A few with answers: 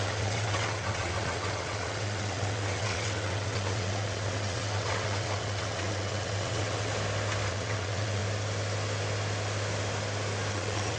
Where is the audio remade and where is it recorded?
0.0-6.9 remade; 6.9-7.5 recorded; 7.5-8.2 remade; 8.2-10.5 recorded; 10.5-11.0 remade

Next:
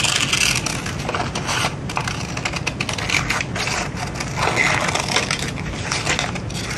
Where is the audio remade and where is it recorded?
0.0-1.3 recorded; 1.3-2.3 remade; 2.3-6.8 recorded

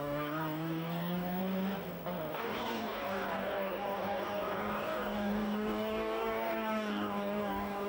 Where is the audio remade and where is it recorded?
0.0-1.4 remade; 1.4-2.3 recorded; 2.3-7.9 remade

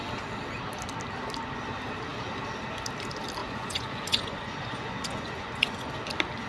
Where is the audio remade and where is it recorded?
0.0-3.4 recorded; 3.4-5.9 remade; 5.9-6.5 recorded

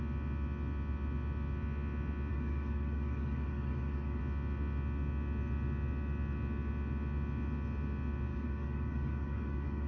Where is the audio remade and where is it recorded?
0.0-2.3 recorded; 2.3-4.2 remade; 4.2-8.3 recorded; 8.3-9.9 remade

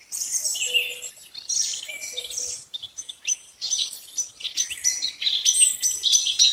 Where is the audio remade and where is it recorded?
0.0-6.5 recorded

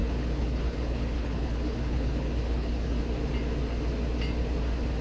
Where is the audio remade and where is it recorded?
0.0-3.0 remade; 3.0-5.0 recorded

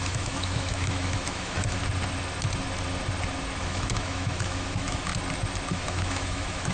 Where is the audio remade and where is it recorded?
0.0-1.8 remade; 1.8-3.6 recorded; 3.6-5.1 remade; 5.1-5.7 recorded; 5.7-6.7 remade